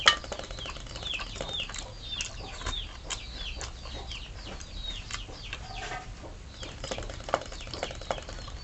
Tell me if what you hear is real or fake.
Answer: real